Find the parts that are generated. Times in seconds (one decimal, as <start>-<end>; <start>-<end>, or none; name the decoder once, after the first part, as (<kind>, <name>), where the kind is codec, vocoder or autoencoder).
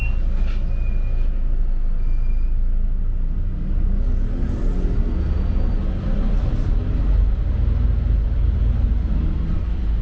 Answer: none